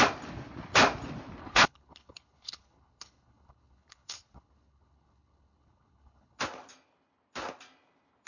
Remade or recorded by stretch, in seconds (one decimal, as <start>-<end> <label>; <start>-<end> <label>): 0.0-1.4 recorded; 1.4-6.4 remade; 6.4-8.3 recorded